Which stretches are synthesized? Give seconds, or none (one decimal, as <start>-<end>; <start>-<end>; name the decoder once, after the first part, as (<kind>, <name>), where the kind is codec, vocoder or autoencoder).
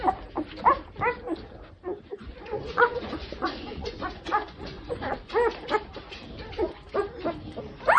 2.1-5.3 (vocoder, Vocos)